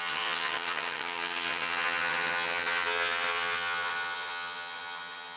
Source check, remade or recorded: remade